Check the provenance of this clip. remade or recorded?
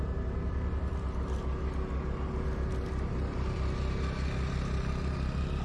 recorded